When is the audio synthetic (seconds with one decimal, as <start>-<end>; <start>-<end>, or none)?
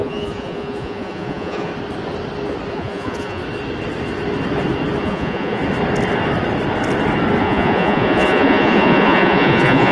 0.0-1.7; 2.7-3.4; 5.0-5.6; 7.4-9.9